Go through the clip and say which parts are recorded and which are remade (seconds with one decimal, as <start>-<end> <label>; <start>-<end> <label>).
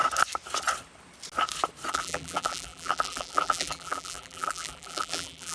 0.0-1.9 recorded; 1.9-5.5 remade